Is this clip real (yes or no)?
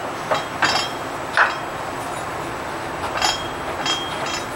yes